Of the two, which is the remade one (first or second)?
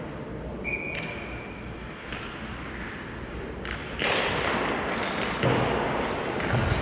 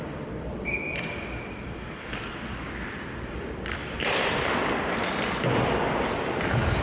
second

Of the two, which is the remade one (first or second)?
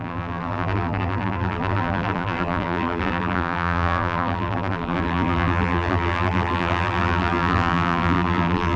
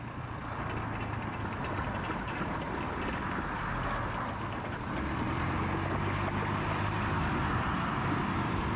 first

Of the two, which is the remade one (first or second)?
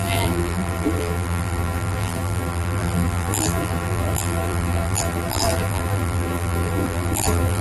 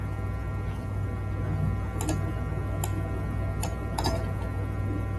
first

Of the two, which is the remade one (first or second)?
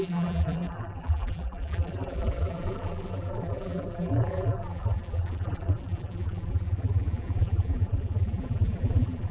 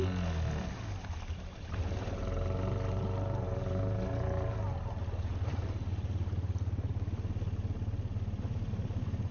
first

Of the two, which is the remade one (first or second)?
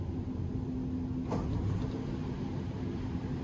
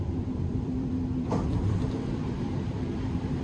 second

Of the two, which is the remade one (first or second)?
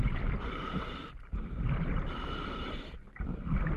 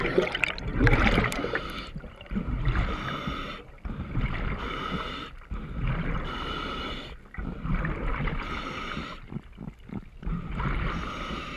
first